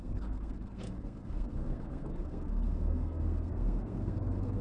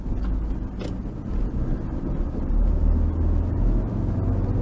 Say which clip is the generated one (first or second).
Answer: first